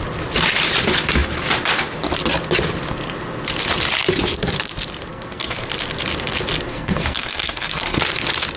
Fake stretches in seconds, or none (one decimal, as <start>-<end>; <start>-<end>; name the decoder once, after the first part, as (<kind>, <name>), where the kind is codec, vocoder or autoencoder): 5.1-5.7 (codec, SNAC); 6.7-8.0